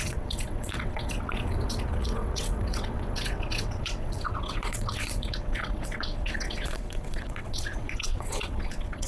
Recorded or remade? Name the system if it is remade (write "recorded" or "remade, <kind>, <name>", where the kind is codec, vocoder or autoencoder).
remade, vocoder, WaveNeXt